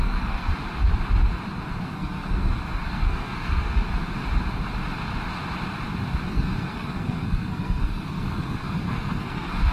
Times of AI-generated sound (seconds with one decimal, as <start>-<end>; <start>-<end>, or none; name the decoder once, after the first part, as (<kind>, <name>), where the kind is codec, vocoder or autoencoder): 0.0-0.5 (codec, SNAC); 1.7-3.9; 6.3-9.7